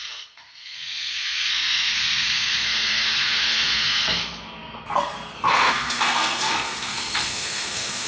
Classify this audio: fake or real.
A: fake